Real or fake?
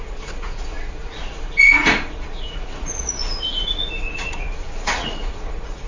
fake